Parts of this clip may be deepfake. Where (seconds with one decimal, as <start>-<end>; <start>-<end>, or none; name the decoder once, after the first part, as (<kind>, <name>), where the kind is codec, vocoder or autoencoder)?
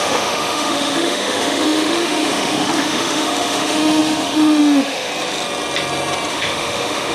0.0-5.1 (autoencoder, DAC-VAE); 6.3-7.1